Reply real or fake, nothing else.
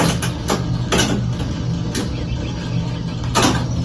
real